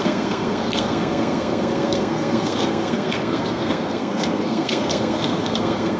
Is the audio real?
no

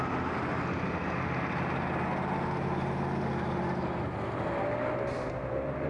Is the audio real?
yes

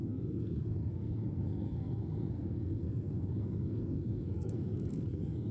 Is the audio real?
no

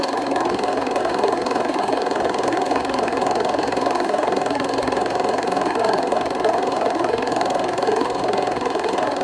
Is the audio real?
no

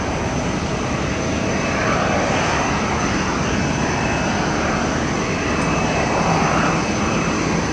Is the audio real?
yes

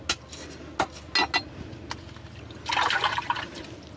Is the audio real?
yes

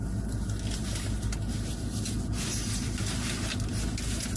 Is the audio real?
yes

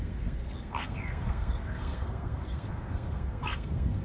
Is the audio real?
no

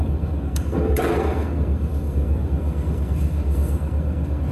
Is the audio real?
no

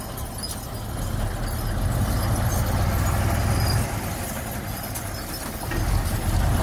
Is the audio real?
yes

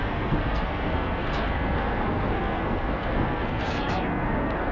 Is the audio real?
no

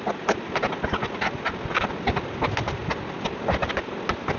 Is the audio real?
yes